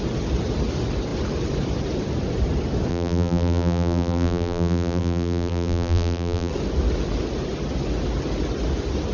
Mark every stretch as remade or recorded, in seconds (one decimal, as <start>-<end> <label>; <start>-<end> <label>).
0.0-2.9 recorded; 2.9-6.5 remade; 6.5-9.1 recorded